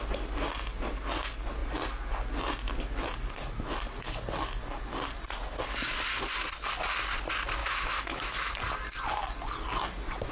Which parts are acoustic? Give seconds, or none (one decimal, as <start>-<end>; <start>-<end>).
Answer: 0.0-7.6; 8.5-10.3